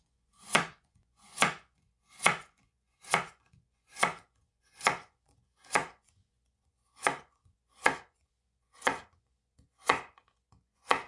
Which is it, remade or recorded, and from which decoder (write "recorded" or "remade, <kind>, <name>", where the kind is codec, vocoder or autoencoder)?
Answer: remade, vocoder, Vocos